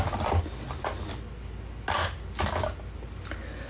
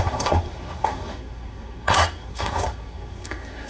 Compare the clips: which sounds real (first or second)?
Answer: first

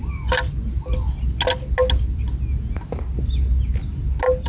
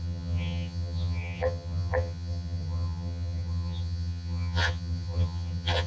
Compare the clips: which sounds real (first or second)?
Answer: first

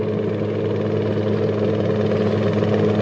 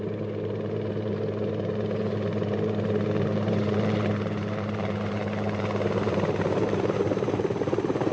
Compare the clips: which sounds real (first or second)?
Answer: first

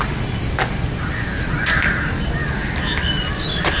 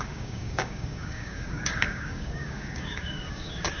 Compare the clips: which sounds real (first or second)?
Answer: first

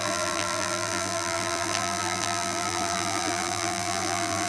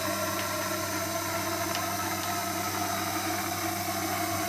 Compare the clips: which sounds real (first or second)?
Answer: second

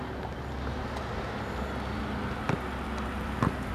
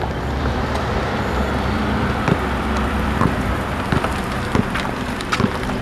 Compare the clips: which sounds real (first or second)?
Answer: first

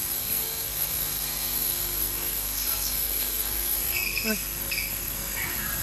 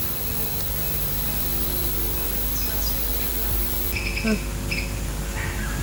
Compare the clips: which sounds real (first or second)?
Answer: second